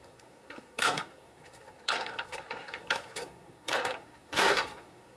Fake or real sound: fake